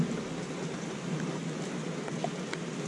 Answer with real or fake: real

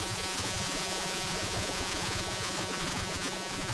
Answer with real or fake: fake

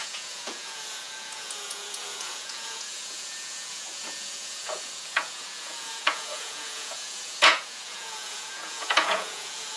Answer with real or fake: fake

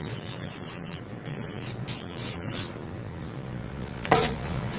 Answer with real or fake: fake